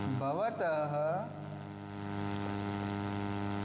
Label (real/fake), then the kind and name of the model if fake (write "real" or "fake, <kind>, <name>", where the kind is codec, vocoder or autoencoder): real